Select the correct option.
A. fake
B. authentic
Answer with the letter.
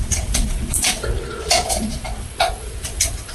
A